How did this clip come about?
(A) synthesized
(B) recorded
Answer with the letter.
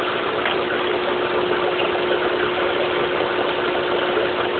B